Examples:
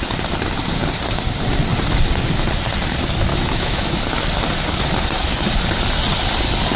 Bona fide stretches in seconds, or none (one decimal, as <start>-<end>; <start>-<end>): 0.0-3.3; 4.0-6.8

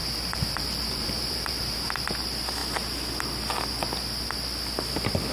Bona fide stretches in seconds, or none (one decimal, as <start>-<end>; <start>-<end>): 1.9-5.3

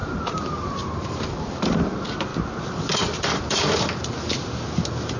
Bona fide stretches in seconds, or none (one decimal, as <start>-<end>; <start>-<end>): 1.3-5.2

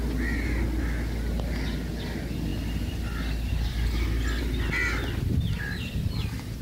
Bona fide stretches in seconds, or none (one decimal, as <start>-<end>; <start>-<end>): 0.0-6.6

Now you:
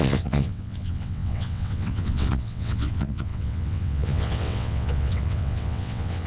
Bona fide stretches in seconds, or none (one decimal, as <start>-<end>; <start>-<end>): none

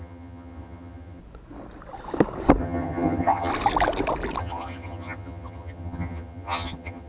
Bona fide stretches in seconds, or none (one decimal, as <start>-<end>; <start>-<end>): 1.2-2.6; 3.5-4.4